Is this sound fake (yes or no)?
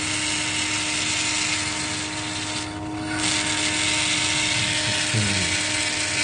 no